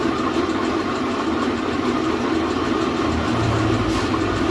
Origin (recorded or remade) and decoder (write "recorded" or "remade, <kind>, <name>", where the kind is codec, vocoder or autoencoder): recorded